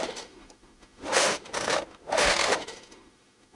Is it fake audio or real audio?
fake